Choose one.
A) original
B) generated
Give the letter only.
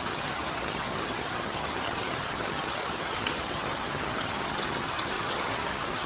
B